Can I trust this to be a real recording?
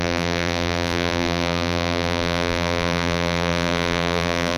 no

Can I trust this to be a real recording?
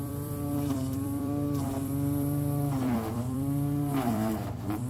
no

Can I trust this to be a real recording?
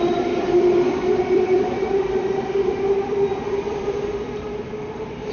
no